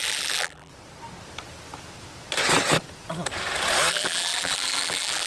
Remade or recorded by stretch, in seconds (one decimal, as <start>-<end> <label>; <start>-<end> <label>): 0.0-0.7 remade; 0.7-3.9 recorded; 3.9-5.3 remade